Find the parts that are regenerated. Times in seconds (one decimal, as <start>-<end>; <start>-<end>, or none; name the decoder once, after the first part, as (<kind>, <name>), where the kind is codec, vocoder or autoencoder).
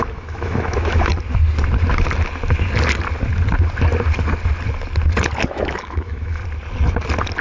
0.0-1.1 (autoencoder, DAC-VAE); 5.5-6.4